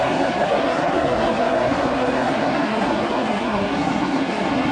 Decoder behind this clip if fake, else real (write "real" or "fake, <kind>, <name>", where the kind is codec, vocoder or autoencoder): fake, codec, SNAC